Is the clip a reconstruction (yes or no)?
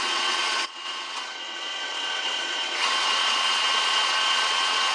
yes